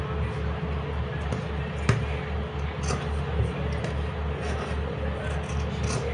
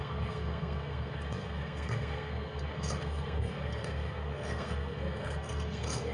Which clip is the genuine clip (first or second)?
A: first